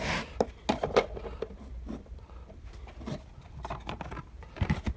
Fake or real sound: real